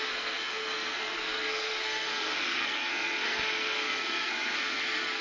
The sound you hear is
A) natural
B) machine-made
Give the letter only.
B